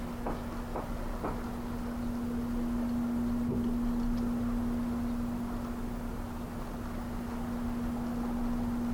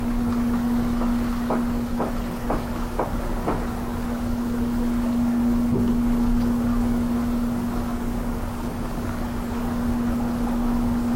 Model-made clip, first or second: second